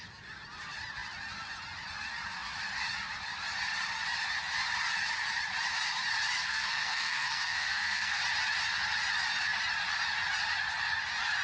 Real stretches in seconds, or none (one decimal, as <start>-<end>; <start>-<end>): 0.0-6.4; 8.2-11.4